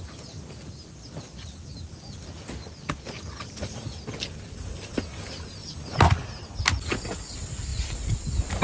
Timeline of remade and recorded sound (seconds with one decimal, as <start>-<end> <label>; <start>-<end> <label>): 0.0-8.6 recorded